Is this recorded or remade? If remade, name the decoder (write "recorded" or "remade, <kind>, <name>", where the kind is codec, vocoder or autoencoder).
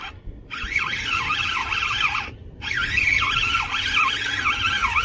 recorded